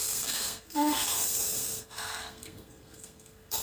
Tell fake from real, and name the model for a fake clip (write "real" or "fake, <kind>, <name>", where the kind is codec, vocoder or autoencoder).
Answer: fake, codec, SNAC